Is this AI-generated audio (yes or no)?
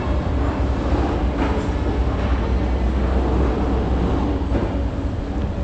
no